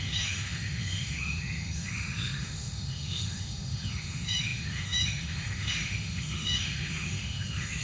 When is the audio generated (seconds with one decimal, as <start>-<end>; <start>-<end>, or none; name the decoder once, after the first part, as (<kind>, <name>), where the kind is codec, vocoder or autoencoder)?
0.0-7.8 (autoencoder, DAC-VAE)